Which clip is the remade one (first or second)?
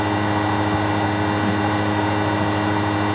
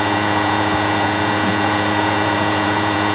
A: second